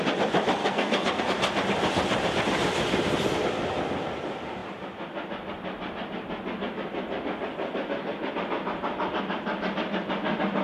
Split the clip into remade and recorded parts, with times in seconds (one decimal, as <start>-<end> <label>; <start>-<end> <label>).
0.0-0.6 recorded; 0.6-1.2 remade; 1.2-10.6 recorded